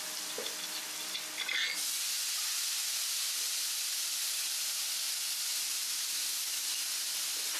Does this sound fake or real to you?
real